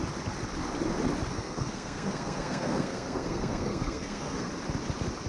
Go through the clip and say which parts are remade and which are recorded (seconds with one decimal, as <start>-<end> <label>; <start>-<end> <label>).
0.0-1.3 recorded; 1.3-4.5 remade; 4.5-5.3 recorded